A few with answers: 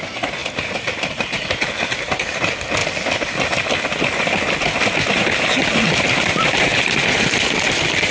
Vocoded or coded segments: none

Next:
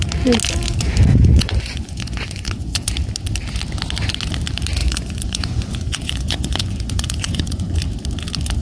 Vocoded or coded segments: 1.1-2.9 (vocoder, Vocos); 4.8-7.8

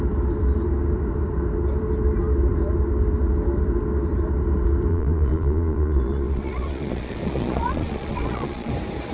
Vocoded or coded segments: 4.9-8.7 (vocoder, Vocos)

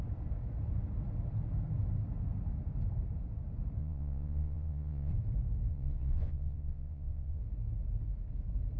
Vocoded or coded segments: 3.8-5.1 (vocoder, Vocos); 5.7-7.4

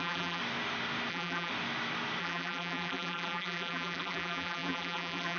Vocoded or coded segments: 0.0-0.4 (vocoder, BigVGAN v2); 1.1-1.5; 2.2-5.4

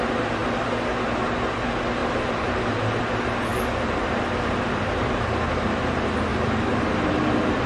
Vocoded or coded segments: 2.0-3.0 (vocoder, BigVGAN v2)

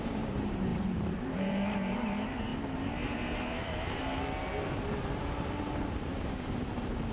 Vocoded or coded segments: 0.0-2.5 (vocoder, BigVGAN v2); 3.6-4.0; 5.2-7.1

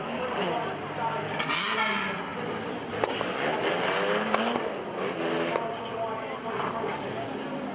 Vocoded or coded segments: none